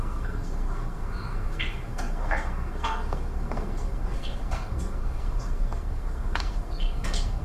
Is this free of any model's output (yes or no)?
no